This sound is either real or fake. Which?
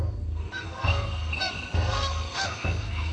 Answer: fake